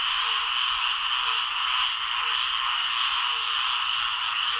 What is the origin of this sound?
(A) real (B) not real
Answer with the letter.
A